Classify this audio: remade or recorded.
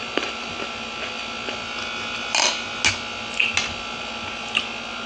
recorded